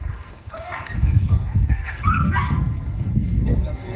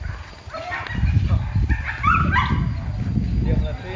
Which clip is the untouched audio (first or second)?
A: second